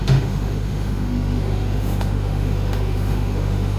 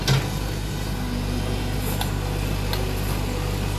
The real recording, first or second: second